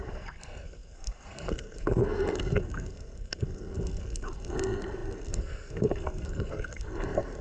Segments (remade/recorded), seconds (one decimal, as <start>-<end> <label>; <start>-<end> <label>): 0.0-7.4 remade